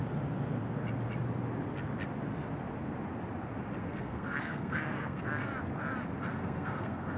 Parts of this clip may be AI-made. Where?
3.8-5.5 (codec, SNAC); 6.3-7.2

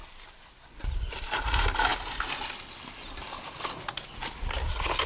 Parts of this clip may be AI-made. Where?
none